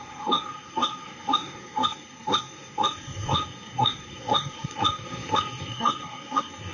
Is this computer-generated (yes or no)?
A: yes